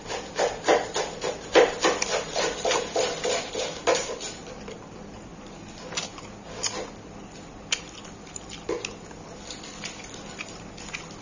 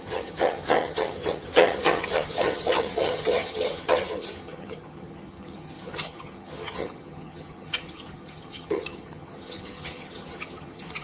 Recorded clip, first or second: first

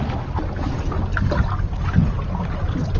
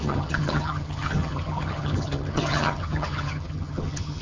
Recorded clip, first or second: first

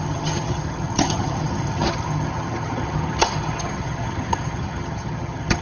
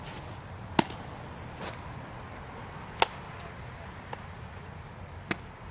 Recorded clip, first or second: second